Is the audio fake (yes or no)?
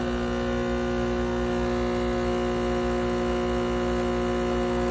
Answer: no